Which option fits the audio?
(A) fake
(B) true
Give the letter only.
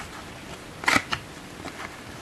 B